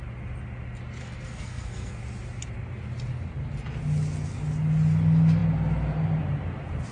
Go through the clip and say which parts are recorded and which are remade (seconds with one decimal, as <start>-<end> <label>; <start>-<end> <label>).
0.0-1.0 recorded; 1.0-2.0 remade; 2.0-6.9 recorded